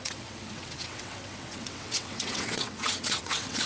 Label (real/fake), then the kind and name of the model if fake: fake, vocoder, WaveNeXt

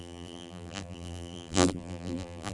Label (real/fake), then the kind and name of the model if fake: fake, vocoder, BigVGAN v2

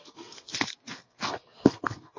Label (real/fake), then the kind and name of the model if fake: fake, codec, SNAC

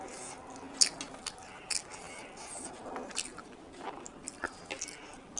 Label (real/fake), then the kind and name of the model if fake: real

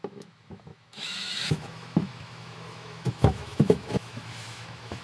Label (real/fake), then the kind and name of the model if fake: fake, autoencoder, DAC-VAE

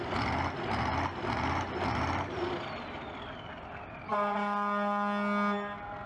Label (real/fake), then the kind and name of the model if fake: real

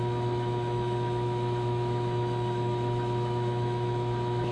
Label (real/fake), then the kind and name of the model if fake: fake, autoencoder, DAC-VAE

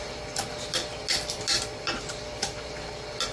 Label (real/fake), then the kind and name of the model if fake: real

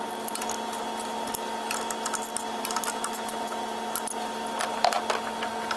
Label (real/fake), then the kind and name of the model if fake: real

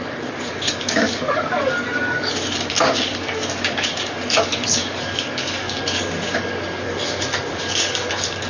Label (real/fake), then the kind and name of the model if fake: fake, codec, DAC